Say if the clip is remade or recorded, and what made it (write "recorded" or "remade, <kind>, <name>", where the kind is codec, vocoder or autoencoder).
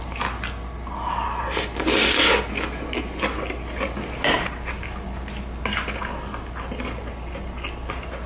recorded